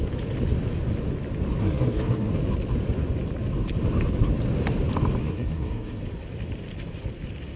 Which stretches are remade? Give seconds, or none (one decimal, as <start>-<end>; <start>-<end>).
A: 1.6-2.3; 5.2-6.0